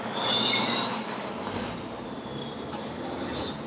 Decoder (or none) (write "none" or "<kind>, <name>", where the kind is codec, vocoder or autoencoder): vocoder, BigVGAN v2